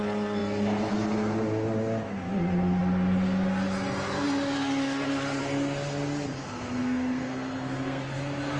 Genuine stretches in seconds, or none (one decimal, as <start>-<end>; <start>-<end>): 0.0-6.3; 8.2-8.6